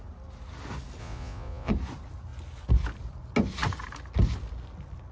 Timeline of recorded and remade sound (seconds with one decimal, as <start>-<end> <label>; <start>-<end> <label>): 0.0-1.0 recorded; 1.0-1.7 remade; 1.7-5.1 recorded